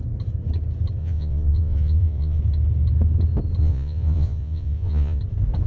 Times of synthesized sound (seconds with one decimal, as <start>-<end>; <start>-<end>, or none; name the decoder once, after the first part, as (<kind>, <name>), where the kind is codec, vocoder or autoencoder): 1.0-2.4 (vocoder, Vocos); 3.6-5.2